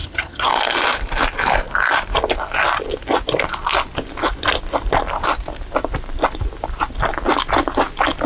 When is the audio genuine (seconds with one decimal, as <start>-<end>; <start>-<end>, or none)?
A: 0.5-8.3